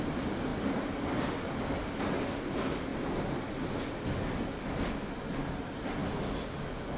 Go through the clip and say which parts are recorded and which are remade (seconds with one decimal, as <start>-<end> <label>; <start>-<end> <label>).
0.0-7.0 recorded